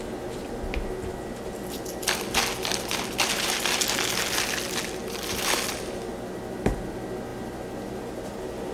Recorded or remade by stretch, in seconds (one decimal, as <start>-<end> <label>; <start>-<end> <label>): 0.0-5.0 recorded; 5.0-6.1 remade; 6.1-7.3 recorded; 7.3-8.0 remade; 8.0-8.7 recorded